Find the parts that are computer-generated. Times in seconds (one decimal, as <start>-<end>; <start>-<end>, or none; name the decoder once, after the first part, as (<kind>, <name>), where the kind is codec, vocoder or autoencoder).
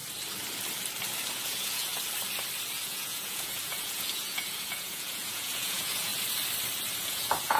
1.3-1.9 (vocoder, Vocos); 2.7-6.1; 7.0-7.6